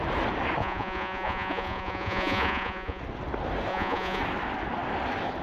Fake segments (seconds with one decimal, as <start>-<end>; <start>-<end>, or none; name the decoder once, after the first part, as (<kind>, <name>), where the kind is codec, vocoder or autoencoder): 0.6-3.0 (vocoder, Vocos); 3.7-4.2